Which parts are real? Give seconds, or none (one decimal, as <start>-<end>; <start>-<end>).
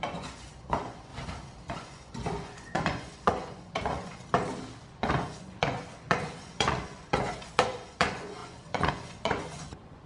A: 1.1-1.7; 4.2-4.8